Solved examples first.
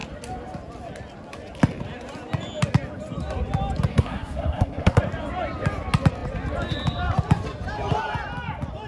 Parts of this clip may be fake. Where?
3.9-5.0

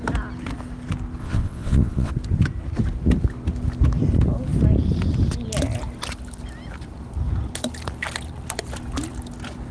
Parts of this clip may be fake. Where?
1.2-2.1

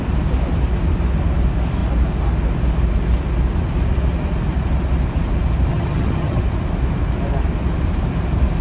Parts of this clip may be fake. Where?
5.7-6.4

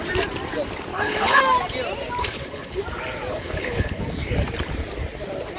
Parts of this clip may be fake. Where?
0.9-1.4; 2.2-2.8; 3.3-4.0